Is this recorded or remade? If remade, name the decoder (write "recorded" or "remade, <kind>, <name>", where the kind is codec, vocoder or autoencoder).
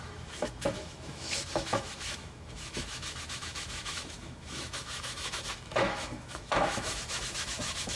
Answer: remade, autoencoder, DAC-VAE